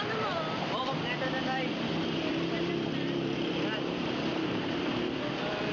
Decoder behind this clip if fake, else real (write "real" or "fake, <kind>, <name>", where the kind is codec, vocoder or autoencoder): fake, vocoder, BigVGAN v2